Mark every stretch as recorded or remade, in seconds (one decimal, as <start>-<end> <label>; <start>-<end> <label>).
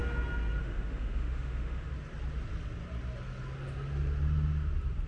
0.0-0.6 recorded; 0.6-1.9 remade; 1.9-5.1 recorded